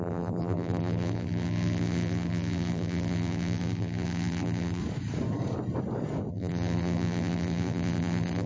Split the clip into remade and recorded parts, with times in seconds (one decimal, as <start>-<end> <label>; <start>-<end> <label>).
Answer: 0.0-4.8 remade; 4.8-6.3 recorded; 6.3-8.5 remade

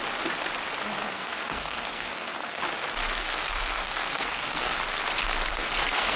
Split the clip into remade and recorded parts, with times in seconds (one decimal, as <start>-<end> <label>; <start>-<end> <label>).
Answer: 0.0-1.0 recorded; 1.0-2.6 remade; 2.6-3.2 recorded; 3.2-4.8 remade; 4.8-5.5 recorded; 5.5-6.2 remade

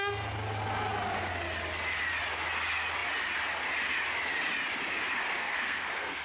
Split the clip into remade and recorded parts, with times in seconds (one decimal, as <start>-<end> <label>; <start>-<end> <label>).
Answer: 0.0-5.4 recorded; 5.4-6.2 remade